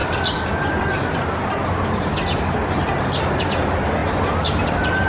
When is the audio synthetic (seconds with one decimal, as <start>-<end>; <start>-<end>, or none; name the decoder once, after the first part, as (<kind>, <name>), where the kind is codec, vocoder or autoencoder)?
0.0-3.1 (vocoder, BigVGAN v2)